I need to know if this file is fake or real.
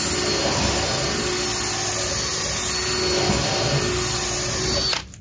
real